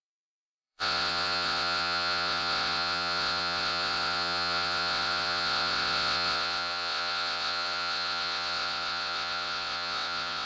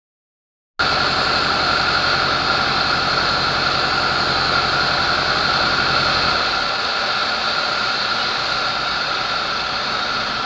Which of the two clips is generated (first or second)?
first